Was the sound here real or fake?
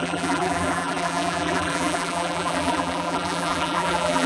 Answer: fake